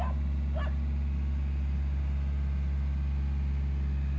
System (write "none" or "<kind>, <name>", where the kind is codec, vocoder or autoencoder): none